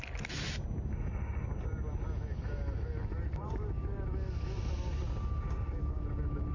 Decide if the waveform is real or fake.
real